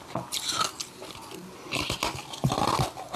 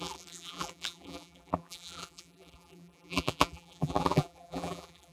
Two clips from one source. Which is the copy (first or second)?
second